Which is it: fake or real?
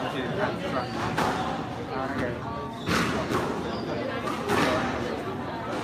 real